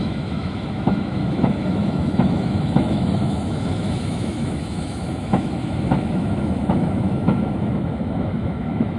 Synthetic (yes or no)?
yes